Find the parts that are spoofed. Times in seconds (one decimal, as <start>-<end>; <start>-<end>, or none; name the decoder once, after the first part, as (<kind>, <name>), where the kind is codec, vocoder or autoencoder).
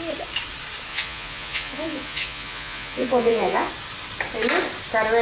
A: 0.9-3.7 (vocoder, Vocos)